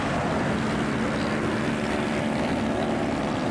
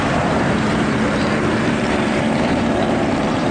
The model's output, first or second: second